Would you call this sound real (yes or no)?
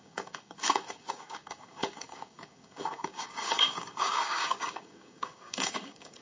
no